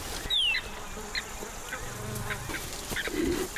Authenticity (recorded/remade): recorded